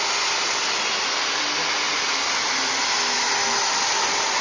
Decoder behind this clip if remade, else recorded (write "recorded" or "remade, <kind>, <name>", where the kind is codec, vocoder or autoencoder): recorded